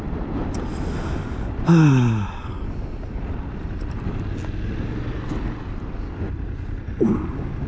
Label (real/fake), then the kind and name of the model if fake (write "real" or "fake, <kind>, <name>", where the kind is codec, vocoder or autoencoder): real